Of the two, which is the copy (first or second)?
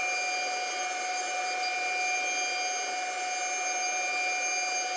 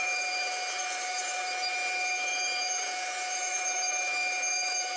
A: second